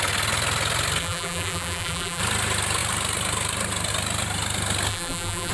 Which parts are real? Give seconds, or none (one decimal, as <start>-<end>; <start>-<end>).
0.0-1.0; 2.2-4.9